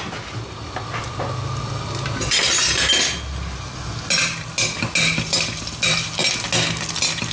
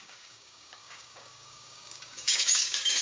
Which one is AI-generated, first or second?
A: second